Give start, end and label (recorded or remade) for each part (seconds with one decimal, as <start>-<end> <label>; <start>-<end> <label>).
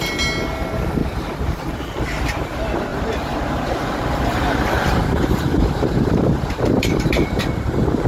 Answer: 0.0-1.0 recorded; 1.0-1.8 remade; 1.8-2.9 recorded; 2.9-5.1 remade; 5.1-5.5 recorded; 5.5-7.4 remade; 7.4-8.1 recorded